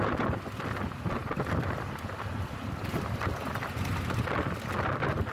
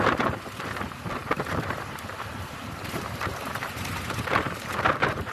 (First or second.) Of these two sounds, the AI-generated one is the second